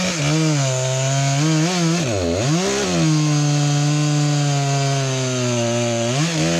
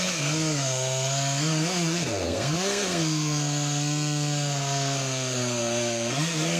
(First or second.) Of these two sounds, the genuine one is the first